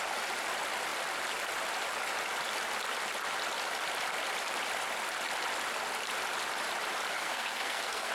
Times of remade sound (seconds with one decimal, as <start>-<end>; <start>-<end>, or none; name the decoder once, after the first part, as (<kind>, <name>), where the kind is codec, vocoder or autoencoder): 7.1-8.1 (codec, SNAC)